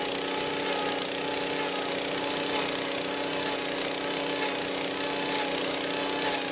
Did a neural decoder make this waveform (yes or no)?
no